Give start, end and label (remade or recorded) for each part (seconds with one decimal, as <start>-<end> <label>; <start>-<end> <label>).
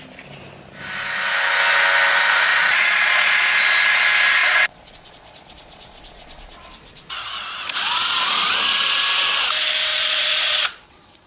0.0-2.5 recorded; 2.5-3.3 remade; 3.3-4.4 recorded; 4.4-8.1 remade; 8.1-9.9 recorded; 9.9-11.3 remade